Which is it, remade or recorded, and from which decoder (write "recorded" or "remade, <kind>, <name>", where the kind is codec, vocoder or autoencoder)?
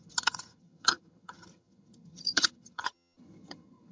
remade, vocoder, HiFi-GAN